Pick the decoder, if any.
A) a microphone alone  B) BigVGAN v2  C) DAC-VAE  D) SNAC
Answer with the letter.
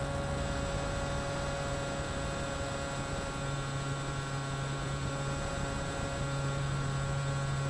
A